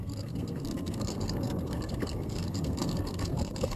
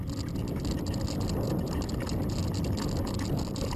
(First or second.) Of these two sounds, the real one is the second